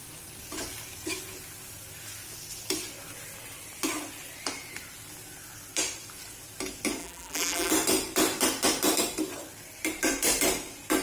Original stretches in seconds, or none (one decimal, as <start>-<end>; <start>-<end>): 0.0-7.0; 7.7-11.0